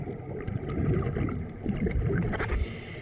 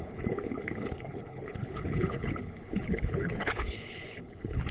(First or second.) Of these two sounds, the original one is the first